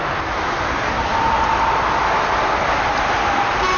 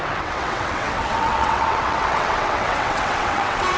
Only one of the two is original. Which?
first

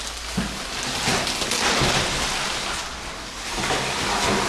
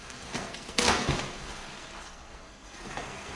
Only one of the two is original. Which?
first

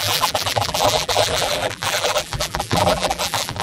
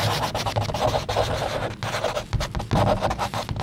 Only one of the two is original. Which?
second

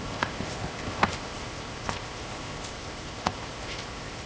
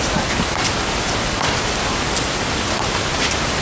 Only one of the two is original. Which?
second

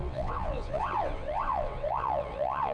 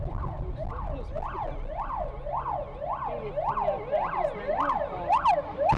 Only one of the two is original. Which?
second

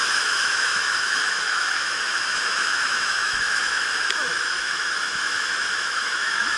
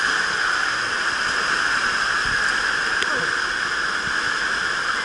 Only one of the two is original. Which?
second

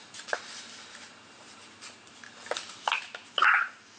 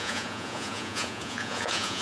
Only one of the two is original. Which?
first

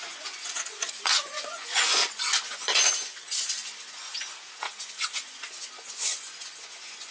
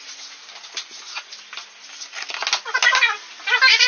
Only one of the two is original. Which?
second